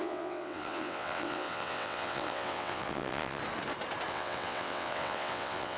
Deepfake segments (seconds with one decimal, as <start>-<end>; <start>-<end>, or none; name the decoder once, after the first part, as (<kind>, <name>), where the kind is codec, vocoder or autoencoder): 0.0-3.4 (vocoder, WaveNeXt); 4.1-5.8